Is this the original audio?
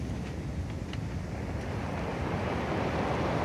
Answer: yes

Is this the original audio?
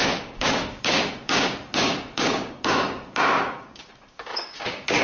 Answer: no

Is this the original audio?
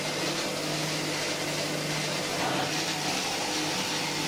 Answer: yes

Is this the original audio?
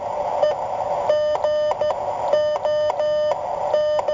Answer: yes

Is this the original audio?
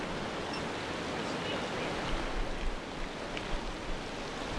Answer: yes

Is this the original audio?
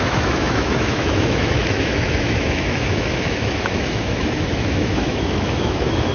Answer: no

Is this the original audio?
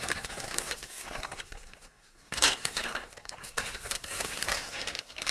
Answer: no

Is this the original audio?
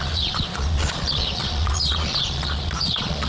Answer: no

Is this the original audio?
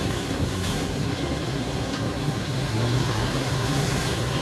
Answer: no